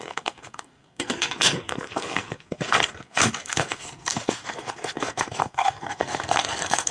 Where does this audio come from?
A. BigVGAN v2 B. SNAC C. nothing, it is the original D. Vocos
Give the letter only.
B